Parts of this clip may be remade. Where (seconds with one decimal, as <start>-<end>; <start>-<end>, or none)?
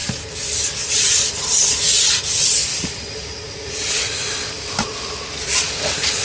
none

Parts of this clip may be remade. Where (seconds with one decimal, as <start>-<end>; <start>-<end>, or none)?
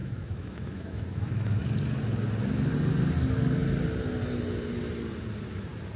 0.0-1.6